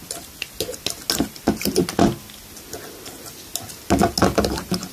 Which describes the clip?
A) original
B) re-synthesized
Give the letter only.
A